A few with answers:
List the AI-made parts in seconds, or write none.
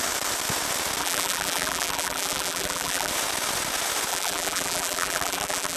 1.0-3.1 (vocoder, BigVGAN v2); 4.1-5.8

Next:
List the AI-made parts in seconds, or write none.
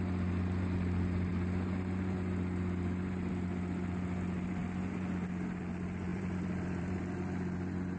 6.1-7.0 (vocoder, BigVGAN v2)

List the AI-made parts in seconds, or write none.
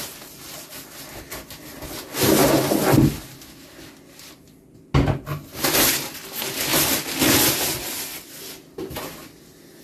none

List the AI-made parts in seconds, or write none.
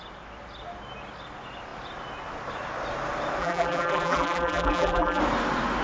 3.4-5.2 (vocoder, BigVGAN v2)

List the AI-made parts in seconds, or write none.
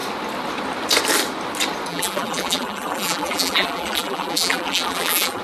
1.9-5.4 (vocoder, BigVGAN v2)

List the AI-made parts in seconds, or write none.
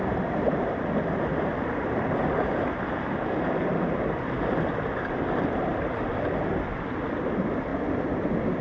1.3-6.0 (vocoder, BigVGAN v2)